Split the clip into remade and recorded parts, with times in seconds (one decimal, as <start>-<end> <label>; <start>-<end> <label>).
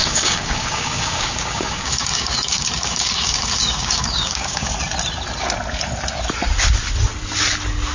0.0-4.7 remade; 4.7-7.9 recorded